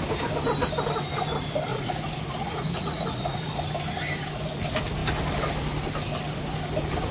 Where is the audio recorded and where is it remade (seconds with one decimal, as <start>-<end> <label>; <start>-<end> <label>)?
0.0-1.7 recorded; 1.7-3.6 remade; 3.6-7.1 recorded